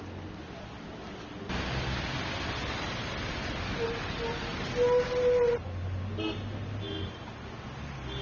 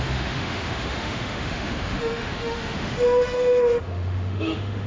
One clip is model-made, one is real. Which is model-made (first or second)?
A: second